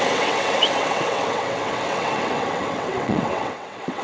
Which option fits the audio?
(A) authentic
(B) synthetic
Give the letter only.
B